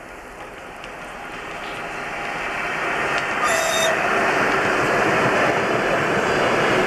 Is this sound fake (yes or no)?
no